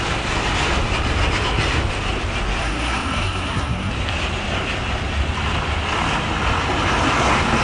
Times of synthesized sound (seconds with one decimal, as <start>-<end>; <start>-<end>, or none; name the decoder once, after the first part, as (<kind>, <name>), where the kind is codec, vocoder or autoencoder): 2.6-3.9 (codec, SNAC)